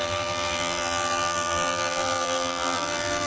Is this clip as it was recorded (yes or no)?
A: no